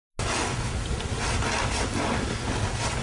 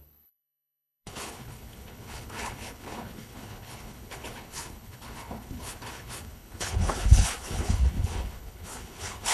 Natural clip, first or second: first